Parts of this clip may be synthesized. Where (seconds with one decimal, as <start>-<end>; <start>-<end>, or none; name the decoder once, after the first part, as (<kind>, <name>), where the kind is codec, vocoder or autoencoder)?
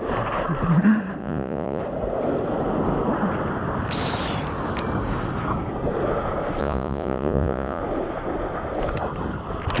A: 1.2-1.8 (vocoder, Vocos); 6.6-7.8